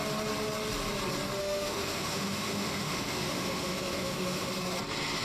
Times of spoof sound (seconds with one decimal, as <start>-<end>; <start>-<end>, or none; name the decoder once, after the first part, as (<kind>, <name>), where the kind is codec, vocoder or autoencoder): 1.4-4.5 (autoencoder, DAC-VAE)